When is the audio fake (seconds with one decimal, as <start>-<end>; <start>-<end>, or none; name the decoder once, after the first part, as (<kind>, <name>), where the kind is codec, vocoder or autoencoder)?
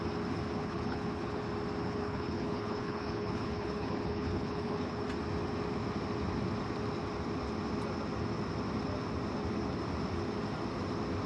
0.6-1.4 (codec, HILCodec); 1.8-5.0